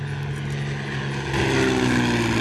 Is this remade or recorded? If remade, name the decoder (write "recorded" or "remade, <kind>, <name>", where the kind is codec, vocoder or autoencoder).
recorded